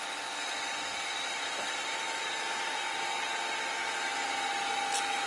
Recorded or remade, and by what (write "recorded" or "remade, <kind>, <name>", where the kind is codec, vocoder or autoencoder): recorded